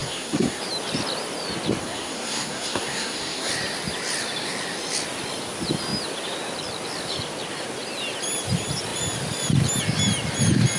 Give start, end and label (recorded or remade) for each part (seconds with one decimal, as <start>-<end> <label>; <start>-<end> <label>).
0.0-0.6 remade; 0.6-1.8 recorded; 1.8-3.5 remade; 3.5-10.8 recorded